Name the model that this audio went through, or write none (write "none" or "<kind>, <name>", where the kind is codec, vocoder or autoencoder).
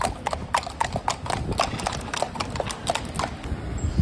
none